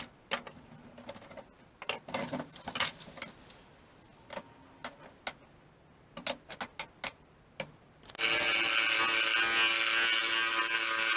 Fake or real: real